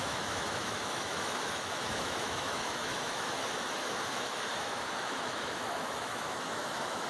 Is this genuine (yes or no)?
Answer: no